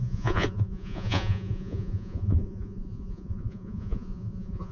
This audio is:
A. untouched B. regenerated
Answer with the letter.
B